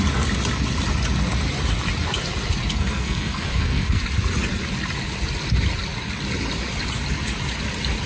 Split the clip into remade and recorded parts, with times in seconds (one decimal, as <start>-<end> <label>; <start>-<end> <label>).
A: 0.0-2.7 recorded; 2.7-4.0 remade; 4.0-8.1 recorded